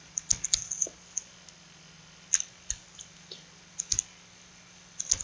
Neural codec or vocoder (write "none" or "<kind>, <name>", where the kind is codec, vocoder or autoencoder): none